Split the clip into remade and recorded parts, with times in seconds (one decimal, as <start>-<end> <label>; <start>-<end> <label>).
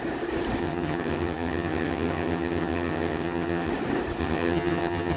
0.0-0.6 recorded; 0.6-3.7 remade; 3.7-4.2 recorded; 4.2-5.2 remade